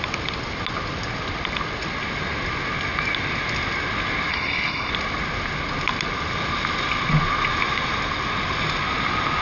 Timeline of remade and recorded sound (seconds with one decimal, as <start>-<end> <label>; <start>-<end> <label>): 0.0-4.3 recorded; 4.3-4.9 remade; 4.9-9.4 recorded